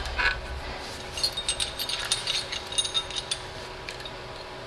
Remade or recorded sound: recorded